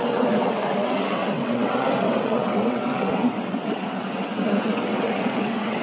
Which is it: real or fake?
fake